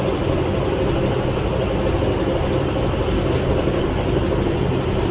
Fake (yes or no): no